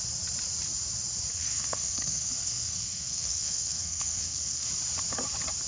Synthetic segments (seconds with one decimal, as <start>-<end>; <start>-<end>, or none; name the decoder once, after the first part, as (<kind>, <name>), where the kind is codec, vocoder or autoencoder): 1.3-4.7 (codec, SNAC)